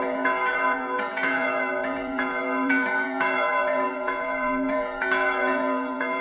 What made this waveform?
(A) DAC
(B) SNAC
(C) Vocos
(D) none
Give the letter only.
C